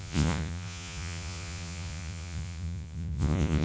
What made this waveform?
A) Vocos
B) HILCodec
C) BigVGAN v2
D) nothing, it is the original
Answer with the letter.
A